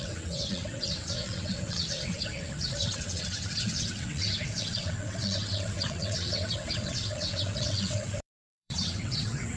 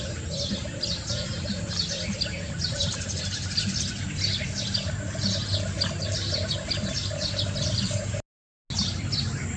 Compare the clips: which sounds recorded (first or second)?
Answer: second